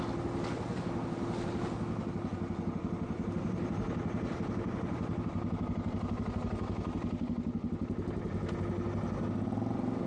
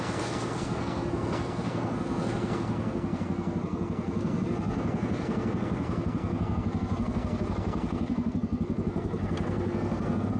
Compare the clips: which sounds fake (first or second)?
second